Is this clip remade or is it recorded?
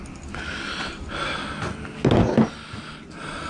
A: recorded